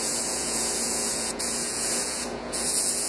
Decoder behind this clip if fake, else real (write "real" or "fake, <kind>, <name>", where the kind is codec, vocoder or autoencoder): fake, vocoder, Vocos